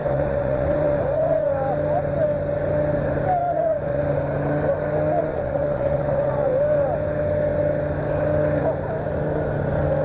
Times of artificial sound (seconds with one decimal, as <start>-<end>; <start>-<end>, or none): 0.0-1.5; 3.4-4.0; 5.2-6.5